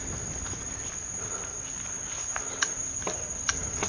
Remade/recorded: recorded